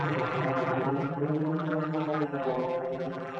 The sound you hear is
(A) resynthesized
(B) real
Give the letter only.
A